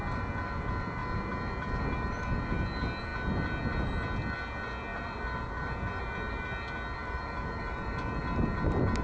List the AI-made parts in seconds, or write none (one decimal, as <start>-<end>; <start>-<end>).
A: 4.9-6.0; 7.0-8.2